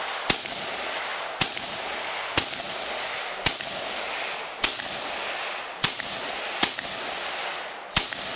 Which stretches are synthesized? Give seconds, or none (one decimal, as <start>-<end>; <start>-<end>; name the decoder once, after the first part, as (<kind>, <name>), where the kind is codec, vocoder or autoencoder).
none